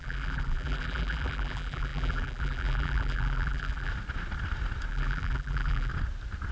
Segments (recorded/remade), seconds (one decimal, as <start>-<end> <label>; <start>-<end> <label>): 0.0-3.9 remade; 3.9-4.9 recorded; 4.9-5.9 remade; 5.9-6.5 recorded